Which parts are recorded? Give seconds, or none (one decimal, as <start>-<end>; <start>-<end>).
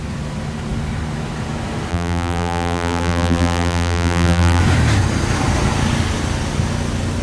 0.0-1.9; 4.6-7.2